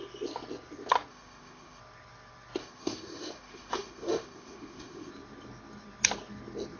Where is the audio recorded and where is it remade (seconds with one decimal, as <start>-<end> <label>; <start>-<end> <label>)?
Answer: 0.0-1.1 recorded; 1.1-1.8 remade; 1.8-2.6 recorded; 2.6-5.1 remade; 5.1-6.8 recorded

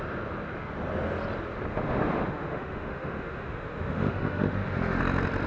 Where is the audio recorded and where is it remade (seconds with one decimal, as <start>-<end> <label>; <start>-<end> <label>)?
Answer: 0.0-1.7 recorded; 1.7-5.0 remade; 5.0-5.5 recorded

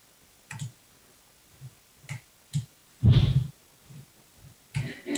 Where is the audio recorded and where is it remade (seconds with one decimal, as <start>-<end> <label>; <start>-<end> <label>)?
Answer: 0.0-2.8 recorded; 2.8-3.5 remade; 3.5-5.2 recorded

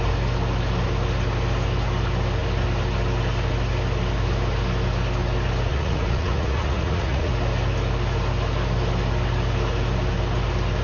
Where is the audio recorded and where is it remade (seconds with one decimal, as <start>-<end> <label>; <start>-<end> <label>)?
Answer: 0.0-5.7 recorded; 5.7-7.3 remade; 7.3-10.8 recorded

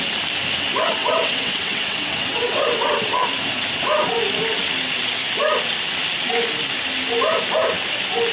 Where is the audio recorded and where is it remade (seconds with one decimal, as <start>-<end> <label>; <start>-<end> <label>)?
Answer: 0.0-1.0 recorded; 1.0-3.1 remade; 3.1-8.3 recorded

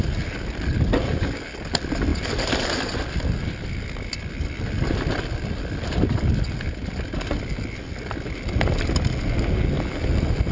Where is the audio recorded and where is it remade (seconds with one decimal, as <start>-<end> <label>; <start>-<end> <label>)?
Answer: 0.0-10.5 recorded